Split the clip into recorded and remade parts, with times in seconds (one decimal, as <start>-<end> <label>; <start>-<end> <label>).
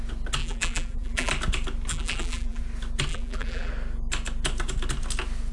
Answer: 0.0-0.4 recorded; 0.4-1.3 remade; 1.3-1.9 recorded; 1.9-2.6 remade; 2.6-3.1 recorded; 3.1-3.7 remade; 3.7-5.5 recorded